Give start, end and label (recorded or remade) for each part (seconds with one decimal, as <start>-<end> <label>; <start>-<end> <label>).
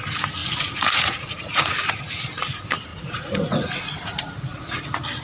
0.0-0.4 recorded; 0.4-1.6 remade; 1.6-2.9 recorded; 2.9-4.8 remade; 4.8-5.2 recorded